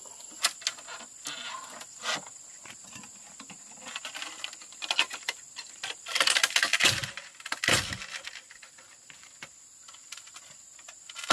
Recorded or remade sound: recorded